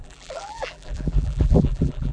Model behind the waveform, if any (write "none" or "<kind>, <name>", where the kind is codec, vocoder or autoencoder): vocoder, BigVGAN v2